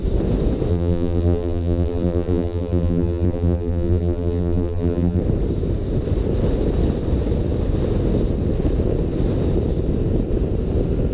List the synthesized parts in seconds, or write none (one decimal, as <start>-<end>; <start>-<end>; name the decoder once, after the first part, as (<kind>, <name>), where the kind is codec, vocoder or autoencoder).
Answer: 0.7-5.2 (vocoder, BigVGAN v2)